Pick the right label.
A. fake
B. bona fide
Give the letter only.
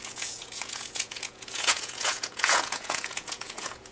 A